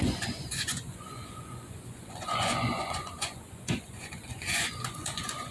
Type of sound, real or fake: fake